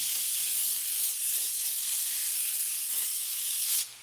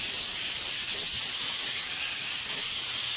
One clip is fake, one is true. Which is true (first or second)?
second